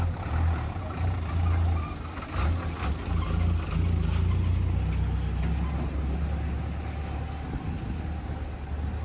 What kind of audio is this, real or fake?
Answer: real